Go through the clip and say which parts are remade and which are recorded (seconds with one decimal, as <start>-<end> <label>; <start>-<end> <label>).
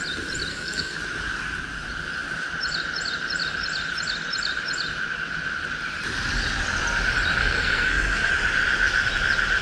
0.0-0.5 recorded; 0.5-1.0 remade; 1.0-7.4 recorded; 7.4-8.3 remade; 8.3-9.6 recorded